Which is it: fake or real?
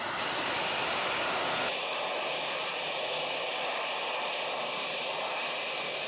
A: real